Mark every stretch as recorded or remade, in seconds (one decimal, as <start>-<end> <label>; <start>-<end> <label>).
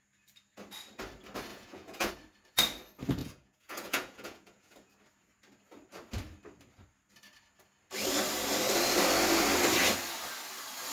0.0-1.5 recorded; 1.5-2.1 remade; 2.1-3.2 recorded; 3.2-4.9 remade; 4.9-10.9 recorded